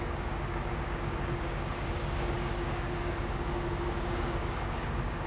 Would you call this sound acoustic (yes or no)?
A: no